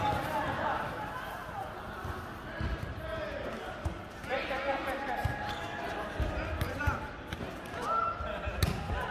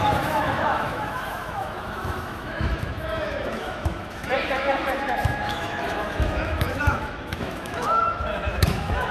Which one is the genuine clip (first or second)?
first